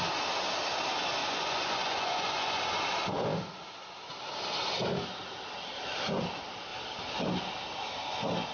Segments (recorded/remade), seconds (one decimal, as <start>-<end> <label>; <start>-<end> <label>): 0.0-1.2 recorded; 1.2-2.6 remade; 2.6-8.5 recorded

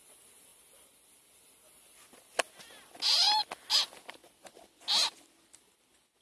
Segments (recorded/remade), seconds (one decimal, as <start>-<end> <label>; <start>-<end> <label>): 0.0-6.2 recorded

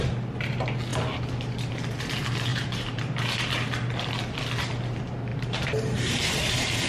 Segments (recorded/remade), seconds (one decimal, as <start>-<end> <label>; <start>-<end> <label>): 0.0-2.5 recorded; 2.5-3.2 remade; 3.2-5.3 recorded; 5.3-6.9 remade

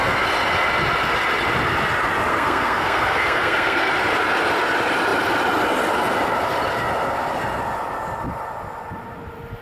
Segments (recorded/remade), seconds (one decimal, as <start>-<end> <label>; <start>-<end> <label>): 0.0-2.3 recorded; 2.3-3.9 remade; 3.9-9.6 recorded

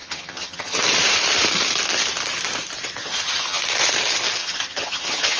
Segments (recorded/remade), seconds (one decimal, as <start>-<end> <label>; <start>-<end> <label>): 0.0-0.8 remade; 0.8-3.0 recorded; 3.0-3.6 remade; 3.6-4.4 recorded; 4.4-5.4 remade